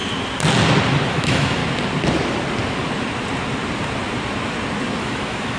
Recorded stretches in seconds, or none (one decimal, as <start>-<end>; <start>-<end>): 0.0-1.1; 1.6-5.0